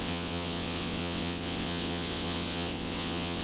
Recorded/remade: remade